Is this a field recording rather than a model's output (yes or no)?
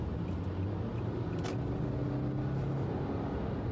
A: yes